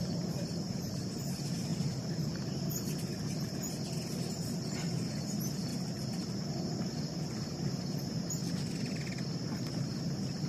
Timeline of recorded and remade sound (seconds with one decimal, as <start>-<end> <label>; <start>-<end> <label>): 0.0-8.4 remade; 8.4-9.9 recorded; 9.9-10.5 remade